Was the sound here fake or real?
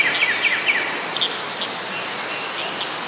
real